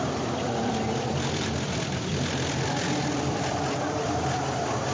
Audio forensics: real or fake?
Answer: fake